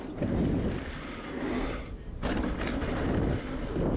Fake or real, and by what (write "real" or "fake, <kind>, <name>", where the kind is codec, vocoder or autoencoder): real